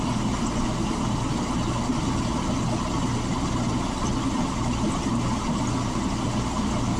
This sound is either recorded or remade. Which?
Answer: recorded